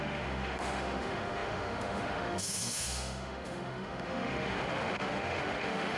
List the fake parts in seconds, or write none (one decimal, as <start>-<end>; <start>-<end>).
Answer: 0.0-6.0